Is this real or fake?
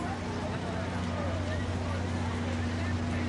real